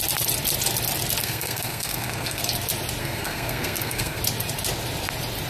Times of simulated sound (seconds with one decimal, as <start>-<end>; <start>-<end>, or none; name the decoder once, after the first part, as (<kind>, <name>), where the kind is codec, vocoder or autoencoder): 1.2-2.4 (codec, SNAC); 3.0-4.2